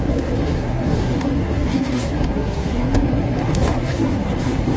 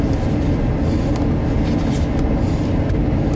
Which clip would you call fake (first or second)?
first